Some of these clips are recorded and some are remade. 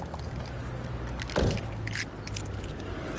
recorded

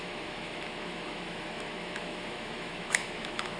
remade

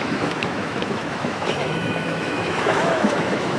remade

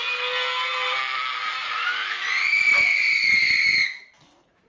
recorded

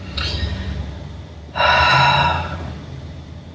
recorded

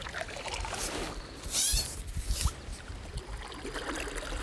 recorded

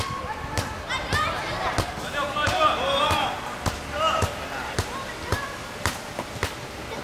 recorded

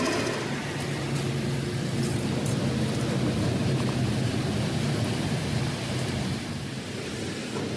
recorded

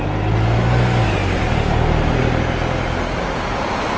recorded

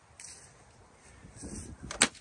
recorded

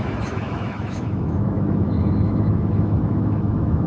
remade